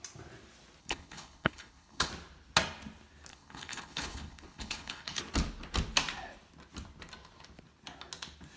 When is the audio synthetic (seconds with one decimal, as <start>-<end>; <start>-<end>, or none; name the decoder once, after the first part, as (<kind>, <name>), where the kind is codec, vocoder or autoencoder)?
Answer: 0.8-2.1 (codec, HILCodec); 3.3-5.2